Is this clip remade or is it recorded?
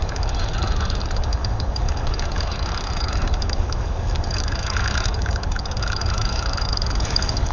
remade